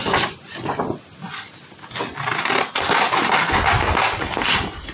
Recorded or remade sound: recorded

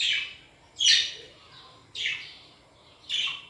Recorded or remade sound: recorded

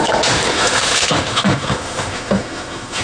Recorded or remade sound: remade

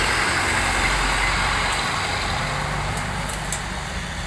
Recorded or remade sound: recorded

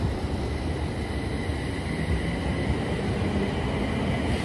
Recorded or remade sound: recorded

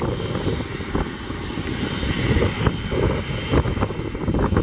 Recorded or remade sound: recorded